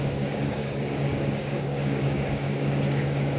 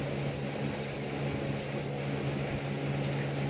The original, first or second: second